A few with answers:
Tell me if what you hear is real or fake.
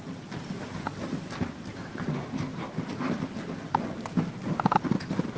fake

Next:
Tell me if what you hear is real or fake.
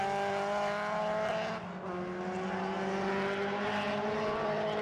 real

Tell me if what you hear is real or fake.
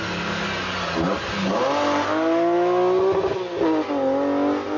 real